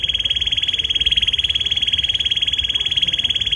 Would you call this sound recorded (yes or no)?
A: yes